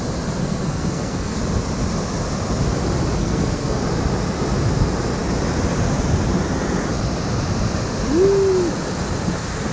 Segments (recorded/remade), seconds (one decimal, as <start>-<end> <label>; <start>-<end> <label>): 0.0-0.4 recorded; 0.4-1.4 remade; 1.4-3.2 recorded; 3.2-3.8 remade; 3.8-9.7 recorded